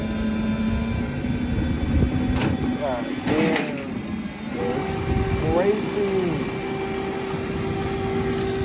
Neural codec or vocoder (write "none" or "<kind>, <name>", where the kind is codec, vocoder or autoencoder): none